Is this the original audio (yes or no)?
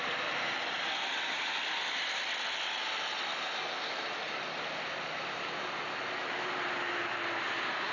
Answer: yes